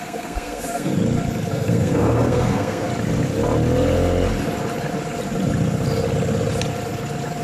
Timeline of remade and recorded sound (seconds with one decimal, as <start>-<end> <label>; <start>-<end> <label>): 0.0-0.9 remade; 0.9-1.5 recorded; 1.5-2.9 remade; 2.9-7.4 recorded